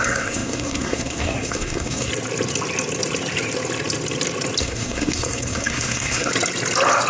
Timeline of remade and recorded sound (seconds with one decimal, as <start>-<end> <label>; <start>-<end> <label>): 0.0-2.1 remade; 2.1-4.6 recorded; 4.6-6.3 remade; 6.3-7.1 recorded